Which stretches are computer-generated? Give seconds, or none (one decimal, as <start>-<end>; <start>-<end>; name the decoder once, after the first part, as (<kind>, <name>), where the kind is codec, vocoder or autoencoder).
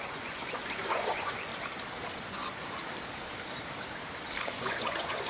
0.0-1.5 (vocoder, Vocos); 2.2-2.8; 4.4-5.3